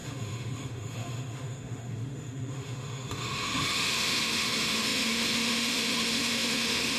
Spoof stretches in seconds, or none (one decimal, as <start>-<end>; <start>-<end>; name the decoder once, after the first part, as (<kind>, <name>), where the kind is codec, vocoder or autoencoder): 0.0-7.0 (autoencoder, DAC-VAE)